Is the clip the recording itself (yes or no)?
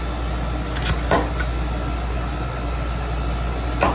yes